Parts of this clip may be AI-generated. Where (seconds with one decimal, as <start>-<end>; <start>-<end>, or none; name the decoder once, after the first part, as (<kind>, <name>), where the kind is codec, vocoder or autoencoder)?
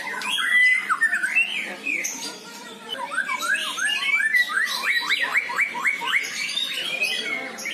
0.5-3.7 (vocoder, BigVGAN v2); 5.3-7.3